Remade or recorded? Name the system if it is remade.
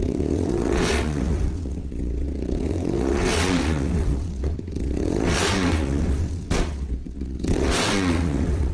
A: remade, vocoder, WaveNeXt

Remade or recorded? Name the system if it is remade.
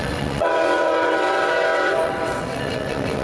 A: remade, vocoder, WaveNeXt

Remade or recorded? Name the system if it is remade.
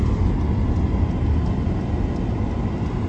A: recorded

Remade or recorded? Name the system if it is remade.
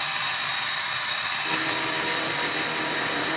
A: recorded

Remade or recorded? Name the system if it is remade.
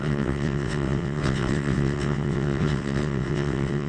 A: remade, vocoder, WaveNeXt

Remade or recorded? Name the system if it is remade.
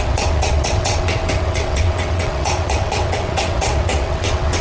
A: remade, vocoder, WaveNeXt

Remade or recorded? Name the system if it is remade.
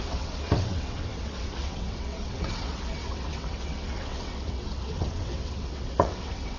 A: remade, vocoder, WaveNeXt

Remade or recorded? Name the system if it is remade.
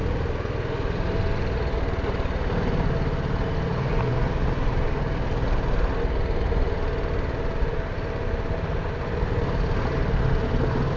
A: recorded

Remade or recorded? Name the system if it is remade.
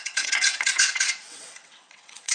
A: remade, vocoder, WaveNeXt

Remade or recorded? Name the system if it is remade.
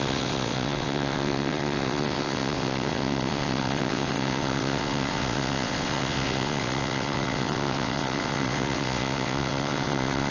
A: remade, vocoder, WaveNeXt